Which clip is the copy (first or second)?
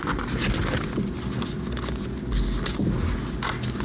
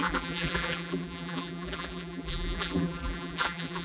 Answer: second